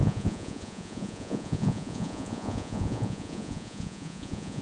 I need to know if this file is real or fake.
fake